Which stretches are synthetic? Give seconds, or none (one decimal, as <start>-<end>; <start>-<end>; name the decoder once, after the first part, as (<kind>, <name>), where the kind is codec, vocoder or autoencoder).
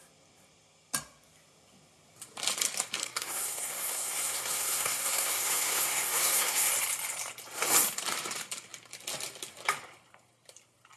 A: 3.0-6.7 (codec, SNAC)